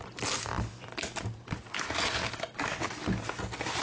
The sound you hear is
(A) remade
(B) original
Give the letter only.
B